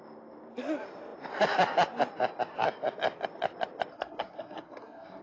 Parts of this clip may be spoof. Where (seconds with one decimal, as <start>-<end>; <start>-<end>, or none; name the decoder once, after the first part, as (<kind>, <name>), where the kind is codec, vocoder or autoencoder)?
3.9-5.2 (codec, SNAC)